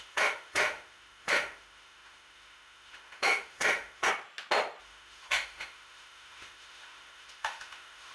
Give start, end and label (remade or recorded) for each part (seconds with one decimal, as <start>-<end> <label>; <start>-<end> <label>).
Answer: 0.0-4.1 remade; 4.1-4.8 recorded; 4.8-8.1 remade